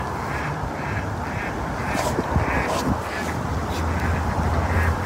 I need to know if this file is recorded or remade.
remade